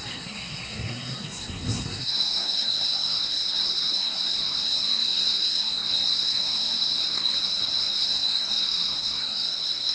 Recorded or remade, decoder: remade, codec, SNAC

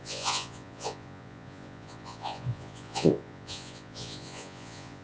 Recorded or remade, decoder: remade, vocoder, Vocos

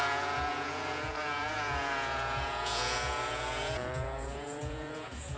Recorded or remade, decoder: remade, vocoder, Vocos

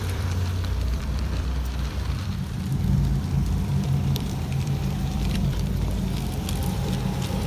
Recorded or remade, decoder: remade, vocoder, BigVGAN v2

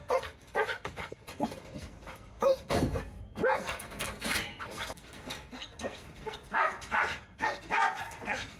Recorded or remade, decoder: remade, codec, SNAC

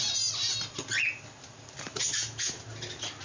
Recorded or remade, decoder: recorded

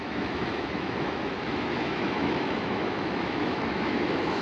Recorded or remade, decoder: remade, autoencoder, DAC-VAE